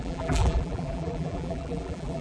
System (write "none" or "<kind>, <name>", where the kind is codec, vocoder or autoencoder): vocoder, BigVGAN v2